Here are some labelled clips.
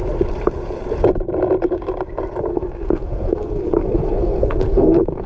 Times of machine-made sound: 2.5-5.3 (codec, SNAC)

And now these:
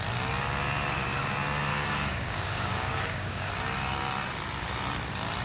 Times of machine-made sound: 1.7-3.5 (codec, DAC)

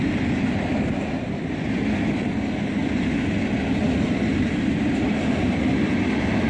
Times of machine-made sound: none

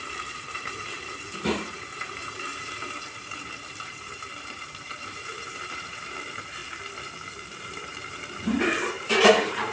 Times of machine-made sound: 0.0-6.6 (vocoder, BigVGAN v2); 7.6-9.7

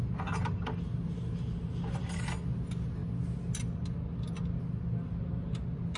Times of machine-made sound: none

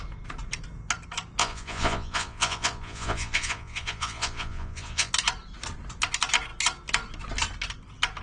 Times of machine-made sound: 1.4-5.1 (vocoder, Vocos)

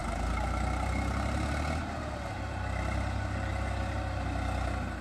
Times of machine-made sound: none

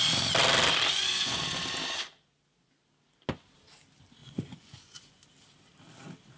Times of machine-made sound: 0.9-1.4 (vocoder, Vocos); 4.2-5.2